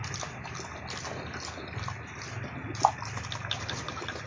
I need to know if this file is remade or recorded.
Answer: recorded